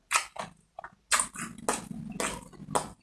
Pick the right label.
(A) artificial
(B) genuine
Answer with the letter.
B